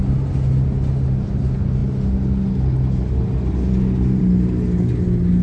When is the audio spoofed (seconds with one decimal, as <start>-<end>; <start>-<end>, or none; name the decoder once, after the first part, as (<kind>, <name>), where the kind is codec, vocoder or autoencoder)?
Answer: none